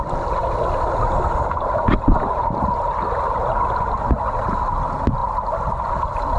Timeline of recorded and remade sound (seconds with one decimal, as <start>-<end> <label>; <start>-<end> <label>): 0.0-6.4 recorded